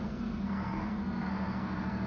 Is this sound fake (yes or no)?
yes